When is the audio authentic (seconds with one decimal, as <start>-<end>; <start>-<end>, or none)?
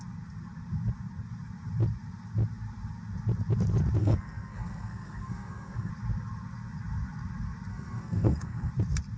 0.0-4.0; 5.9-7.7; 8.7-9.2